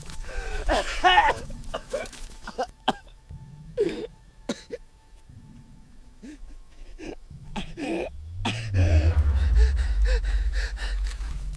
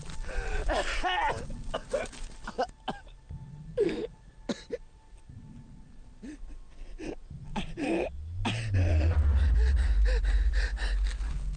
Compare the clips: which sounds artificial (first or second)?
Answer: first